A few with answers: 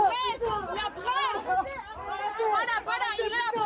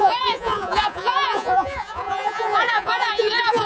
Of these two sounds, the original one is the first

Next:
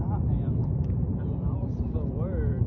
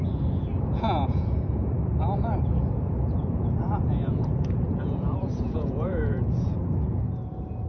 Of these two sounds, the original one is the first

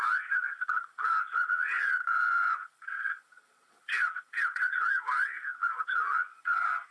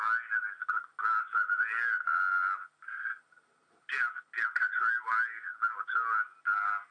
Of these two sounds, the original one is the second